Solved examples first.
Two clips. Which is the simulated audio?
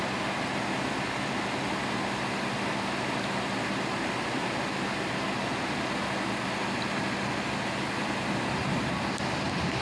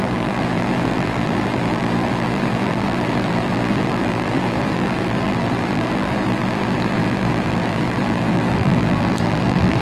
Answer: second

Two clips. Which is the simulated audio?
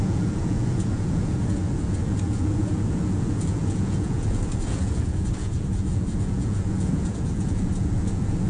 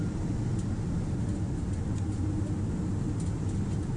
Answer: first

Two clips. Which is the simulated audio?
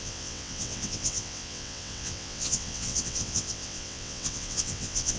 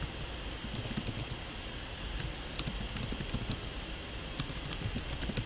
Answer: first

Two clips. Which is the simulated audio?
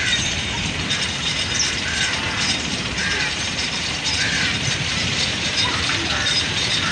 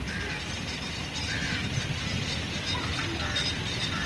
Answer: first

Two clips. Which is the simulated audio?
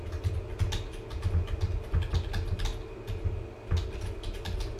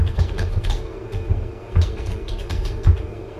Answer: second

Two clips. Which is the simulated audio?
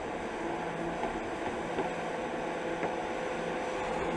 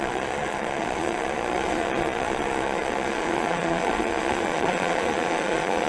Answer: second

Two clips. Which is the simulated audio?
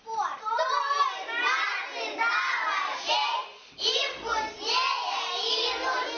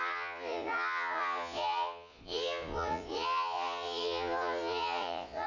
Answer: second